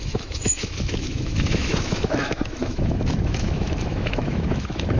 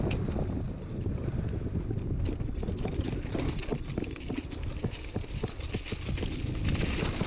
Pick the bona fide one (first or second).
second